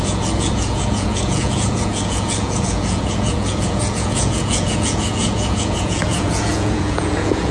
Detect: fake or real fake